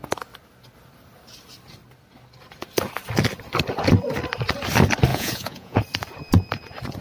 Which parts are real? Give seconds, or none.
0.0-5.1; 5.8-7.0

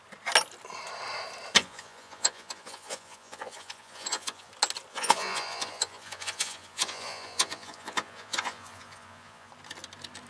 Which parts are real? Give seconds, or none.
0.0-1.6; 4.5-4.9; 9.5-10.3